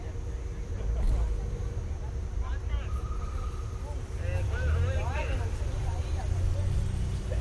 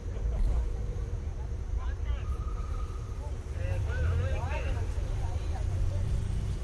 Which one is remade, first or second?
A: second